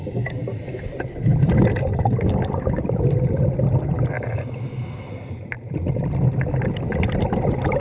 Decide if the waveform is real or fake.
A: real